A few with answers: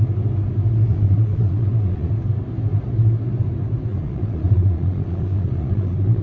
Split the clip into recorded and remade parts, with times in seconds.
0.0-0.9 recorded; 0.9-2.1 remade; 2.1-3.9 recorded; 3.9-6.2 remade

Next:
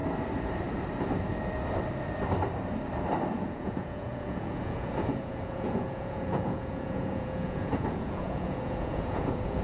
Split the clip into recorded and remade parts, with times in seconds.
0.0-3.3 recorded; 3.3-9.6 remade

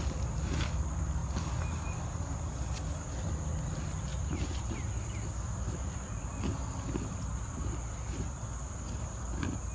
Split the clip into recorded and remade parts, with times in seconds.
0.0-9.7 recorded